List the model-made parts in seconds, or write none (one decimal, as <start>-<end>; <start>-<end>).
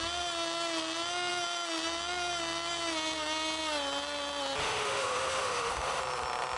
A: 4.6-6.0